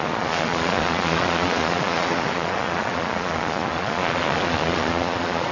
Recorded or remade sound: remade